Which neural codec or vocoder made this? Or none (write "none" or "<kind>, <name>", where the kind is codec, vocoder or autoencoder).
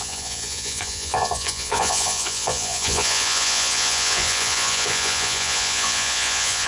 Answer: vocoder, Vocos